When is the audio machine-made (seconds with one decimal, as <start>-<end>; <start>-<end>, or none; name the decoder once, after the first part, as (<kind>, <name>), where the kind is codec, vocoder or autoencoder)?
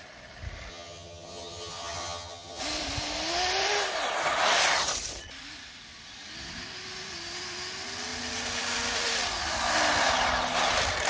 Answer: 0.7-2.6 (vocoder, HiFi-GAN)